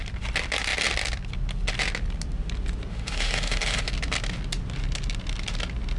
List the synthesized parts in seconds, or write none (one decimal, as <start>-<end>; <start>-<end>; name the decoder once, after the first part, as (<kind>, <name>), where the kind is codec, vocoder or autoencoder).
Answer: 2.9-3.9 (autoencoder, DAC-VAE)